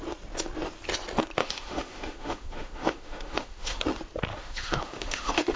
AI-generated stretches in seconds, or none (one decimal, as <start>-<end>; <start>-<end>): 1.4-3.8; 4.3-5.6